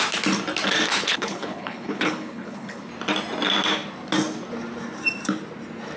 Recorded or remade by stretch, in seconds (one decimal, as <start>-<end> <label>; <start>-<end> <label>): 0.0-0.9 recorded; 0.9-2.9 remade; 2.9-6.0 recorded

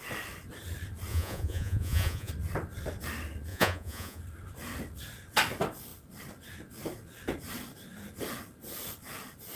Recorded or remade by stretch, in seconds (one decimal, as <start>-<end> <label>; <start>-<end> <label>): 0.0-1.1 recorded; 1.1-2.3 remade; 2.3-3.5 recorded; 3.5-4.2 remade; 4.2-9.6 recorded

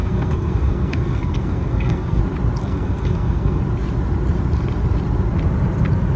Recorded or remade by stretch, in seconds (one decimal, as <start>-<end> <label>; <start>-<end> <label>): 0.0-2.2 remade; 2.2-2.6 recorded; 2.6-3.6 remade; 3.6-6.2 recorded

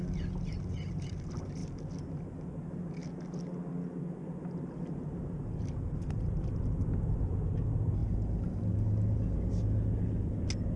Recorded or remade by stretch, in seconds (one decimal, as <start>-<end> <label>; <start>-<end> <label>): 0.0-10.8 recorded

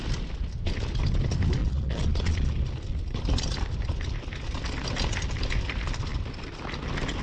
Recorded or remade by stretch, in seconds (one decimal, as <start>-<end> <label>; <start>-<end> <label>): 0.0-1.6 recorded; 1.6-2.5 remade; 2.5-7.2 recorded

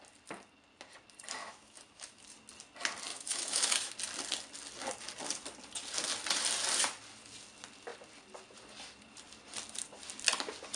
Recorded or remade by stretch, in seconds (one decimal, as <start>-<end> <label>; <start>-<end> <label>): 0.0-1.4 recorded; 1.4-2.2 remade; 2.2-3.1 recorded; 3.1-3.9 remade; 3.9-10.8 recorded

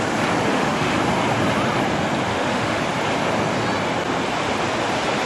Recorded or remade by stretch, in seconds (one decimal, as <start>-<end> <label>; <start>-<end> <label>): 0.0-0.5 recorded; 0.5-1.0 remade; 1.0-2.3 recorded; 2.3-2.8 remade; 2.8-5.3 recorded

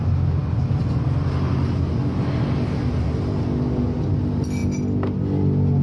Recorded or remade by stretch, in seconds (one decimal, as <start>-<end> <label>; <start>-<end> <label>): 0.0-5.8 recorded